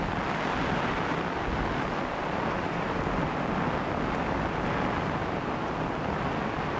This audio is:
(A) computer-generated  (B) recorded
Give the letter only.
B